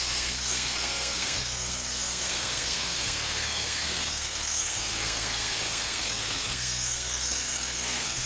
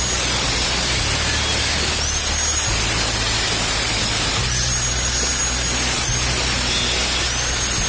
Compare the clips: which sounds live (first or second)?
second